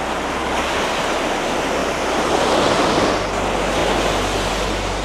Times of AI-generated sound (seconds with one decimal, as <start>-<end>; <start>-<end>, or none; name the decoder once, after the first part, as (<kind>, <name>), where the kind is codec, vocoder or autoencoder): 0.4-1.0 (codec, DAC)